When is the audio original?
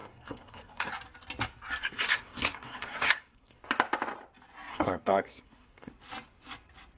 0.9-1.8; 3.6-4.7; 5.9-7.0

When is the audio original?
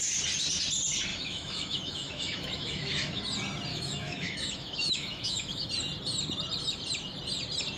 0.0-1.1; 3.2-3.7; 5.7-7.8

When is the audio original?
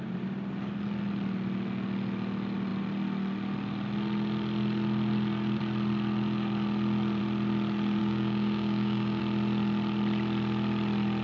0.0-8.0; 9.2-11.2